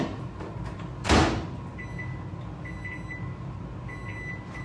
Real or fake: real